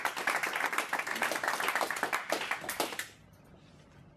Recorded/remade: remade